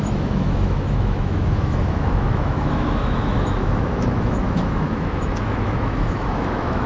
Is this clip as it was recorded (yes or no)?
no